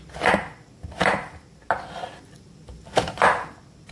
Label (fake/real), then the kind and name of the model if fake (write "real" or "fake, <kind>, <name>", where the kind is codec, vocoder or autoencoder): real